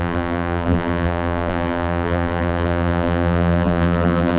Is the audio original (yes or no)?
no